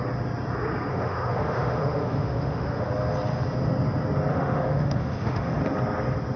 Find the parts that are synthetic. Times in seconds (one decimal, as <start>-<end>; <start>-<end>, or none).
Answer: 0.9-2.9; 4.3-5.6